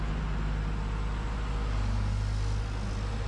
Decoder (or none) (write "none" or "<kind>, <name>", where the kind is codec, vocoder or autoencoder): none